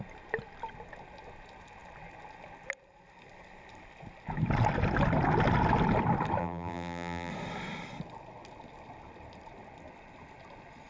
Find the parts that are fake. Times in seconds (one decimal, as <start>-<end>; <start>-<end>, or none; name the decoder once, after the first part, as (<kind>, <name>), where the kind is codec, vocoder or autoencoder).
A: 6.4-7.3 (vocoder, BigVGAN v2)